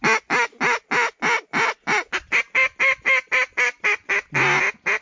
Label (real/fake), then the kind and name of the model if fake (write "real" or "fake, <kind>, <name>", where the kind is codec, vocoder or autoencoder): real